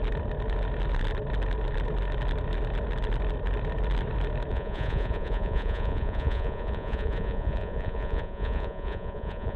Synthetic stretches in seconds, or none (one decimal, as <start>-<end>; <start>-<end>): 4.5-9.6